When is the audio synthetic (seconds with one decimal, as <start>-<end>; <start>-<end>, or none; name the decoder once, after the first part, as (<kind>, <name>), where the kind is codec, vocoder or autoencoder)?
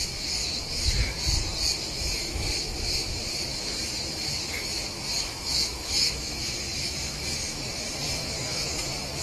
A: 0.0-1.2 (autoencoder, DAC-VAE); 1.9-9.2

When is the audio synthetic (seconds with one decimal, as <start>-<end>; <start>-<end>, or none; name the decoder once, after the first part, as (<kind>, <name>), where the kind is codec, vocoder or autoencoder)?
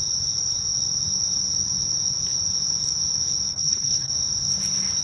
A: 3.5-4.1 (codec, HILCodec)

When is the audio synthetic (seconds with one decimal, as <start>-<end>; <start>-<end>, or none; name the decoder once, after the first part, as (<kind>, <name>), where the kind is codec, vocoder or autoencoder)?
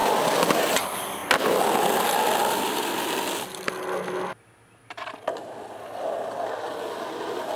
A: none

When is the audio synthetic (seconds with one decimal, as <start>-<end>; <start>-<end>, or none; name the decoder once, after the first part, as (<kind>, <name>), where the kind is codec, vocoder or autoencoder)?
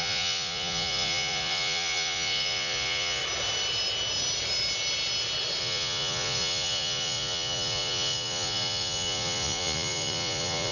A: 0.0-3.2 (vocoder, Vocos); 5.6-10.7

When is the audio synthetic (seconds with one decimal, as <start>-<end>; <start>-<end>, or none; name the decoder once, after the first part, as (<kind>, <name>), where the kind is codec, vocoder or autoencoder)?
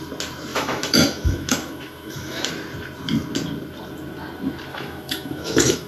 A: 0.5-2.5 (autoencoder, DAC-VAE); 4.7-5.9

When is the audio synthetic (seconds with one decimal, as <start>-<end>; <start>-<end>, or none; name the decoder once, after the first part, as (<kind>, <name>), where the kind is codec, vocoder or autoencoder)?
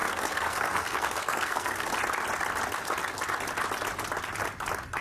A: 0.0-1.9 (codec, SNAC)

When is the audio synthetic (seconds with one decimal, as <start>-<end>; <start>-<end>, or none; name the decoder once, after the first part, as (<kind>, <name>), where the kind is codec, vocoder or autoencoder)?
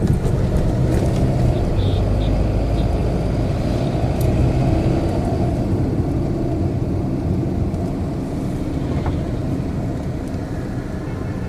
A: none